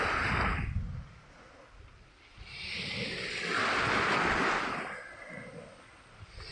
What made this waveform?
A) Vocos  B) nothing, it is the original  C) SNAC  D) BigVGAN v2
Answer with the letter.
B